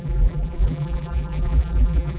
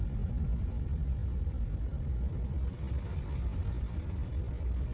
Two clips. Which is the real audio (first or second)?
second